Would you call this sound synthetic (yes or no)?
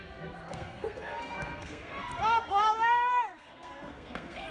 yes